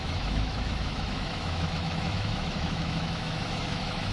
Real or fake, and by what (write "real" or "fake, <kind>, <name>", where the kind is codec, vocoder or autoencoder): fake, autoencoder, DAC-VAE